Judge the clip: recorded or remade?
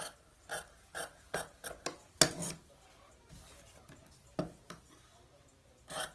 recorded